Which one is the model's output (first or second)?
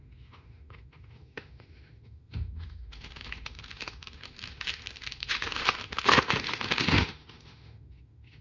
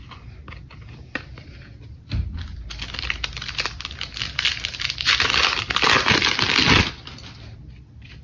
first